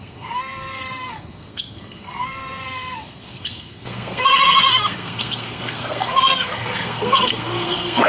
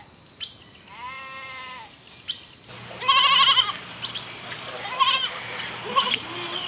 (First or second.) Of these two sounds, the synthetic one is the first